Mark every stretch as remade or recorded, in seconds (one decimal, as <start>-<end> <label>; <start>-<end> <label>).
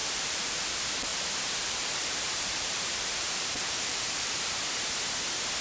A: 0.0-0.6 remade; 0.6-1.1 recorded; 1.1-4.5 remade; 4.5-5.6 recorded